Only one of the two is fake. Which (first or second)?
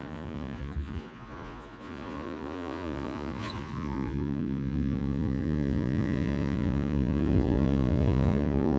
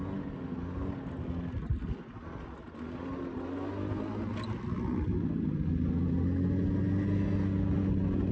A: first